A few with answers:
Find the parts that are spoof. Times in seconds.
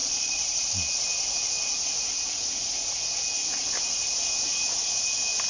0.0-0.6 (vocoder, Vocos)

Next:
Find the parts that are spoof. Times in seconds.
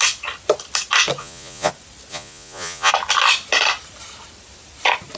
1.2-1.7 (vocoder, Vocos); 2.1-2.9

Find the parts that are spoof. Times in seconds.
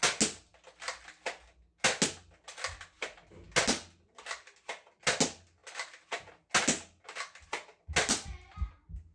none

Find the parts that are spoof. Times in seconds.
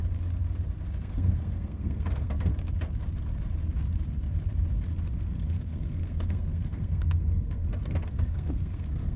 1.0-2.5 (codec, SNAC); 5.2-9.2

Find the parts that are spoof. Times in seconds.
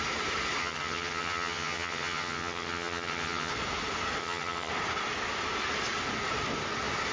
0.6-3.5 (vocoder, HiFi-GAN); 4.2-4.7